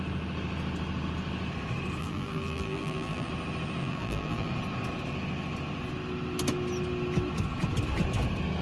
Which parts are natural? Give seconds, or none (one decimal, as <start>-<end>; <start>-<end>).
0.0-2.0; 3.3-3.8; 4.5-8.6